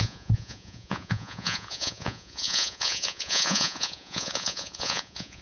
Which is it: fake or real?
fake